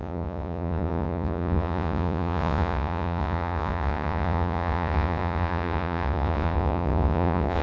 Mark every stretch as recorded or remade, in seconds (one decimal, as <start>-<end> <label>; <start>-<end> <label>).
0.0-7.6 remade